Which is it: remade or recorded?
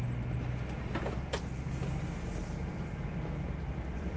recorded